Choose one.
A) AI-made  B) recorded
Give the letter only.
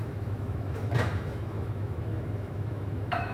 A